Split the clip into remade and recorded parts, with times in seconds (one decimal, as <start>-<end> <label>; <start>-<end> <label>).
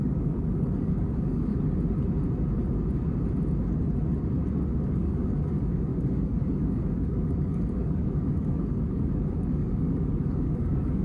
0.0-1.5 remade; 1.5-4.7 recorded; 4.7-11.0 remade